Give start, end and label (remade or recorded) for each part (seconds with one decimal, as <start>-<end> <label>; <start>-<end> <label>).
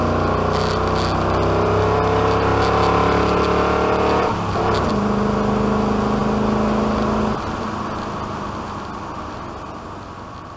0.0-10.6 recorded